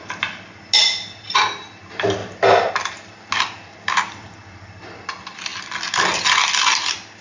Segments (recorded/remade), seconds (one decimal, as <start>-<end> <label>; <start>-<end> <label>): 0.0-7.2 recorded